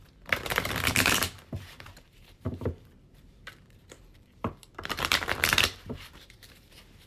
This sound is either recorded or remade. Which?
remade